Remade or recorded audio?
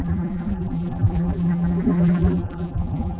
remade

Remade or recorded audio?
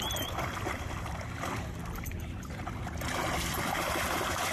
remade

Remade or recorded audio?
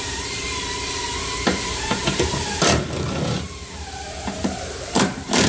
remade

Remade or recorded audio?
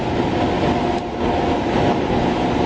recorded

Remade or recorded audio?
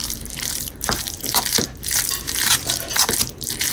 remade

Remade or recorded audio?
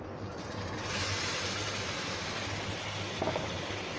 recorded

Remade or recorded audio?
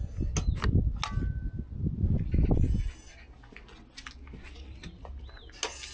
recorded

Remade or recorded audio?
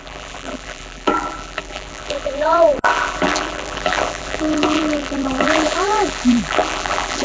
remade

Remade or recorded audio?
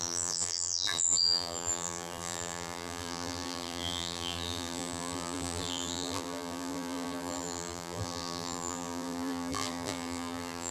remade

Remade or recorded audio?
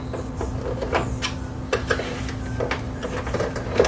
recorded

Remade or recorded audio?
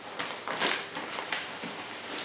remade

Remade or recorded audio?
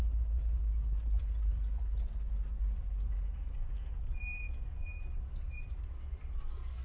recorded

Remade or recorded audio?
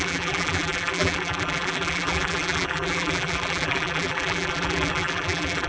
remade